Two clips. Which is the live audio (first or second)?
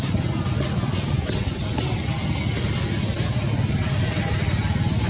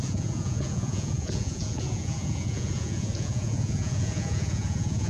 first